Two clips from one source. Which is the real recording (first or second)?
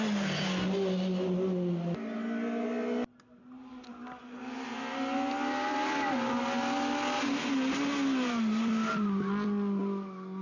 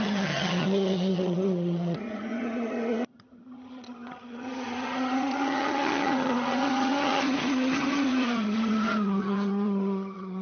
first